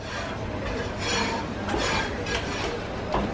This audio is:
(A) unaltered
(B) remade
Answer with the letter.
A